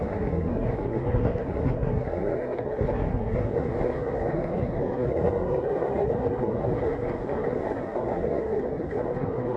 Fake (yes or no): yes